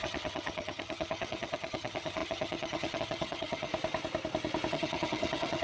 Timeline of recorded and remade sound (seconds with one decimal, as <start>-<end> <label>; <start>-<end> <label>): 0.0-3.7 remade; 3.7-4.7 recorded; 4.7-5.6 remade